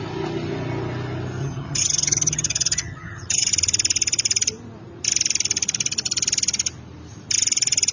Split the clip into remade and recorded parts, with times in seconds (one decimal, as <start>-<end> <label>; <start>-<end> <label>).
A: 0.0-1.4 recorded; 1.4-3.5 remade; 3.5-7.9 recorded